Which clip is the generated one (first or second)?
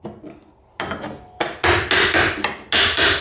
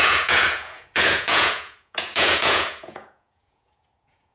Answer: second